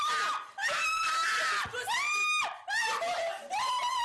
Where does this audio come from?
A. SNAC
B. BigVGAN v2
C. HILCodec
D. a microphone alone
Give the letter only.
D